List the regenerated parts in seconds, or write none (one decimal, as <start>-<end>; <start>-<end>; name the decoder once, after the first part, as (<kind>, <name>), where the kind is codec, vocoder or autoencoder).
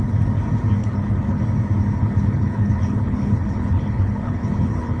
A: 0.8-1.4 (codec, HILCodec); 2.0-5.0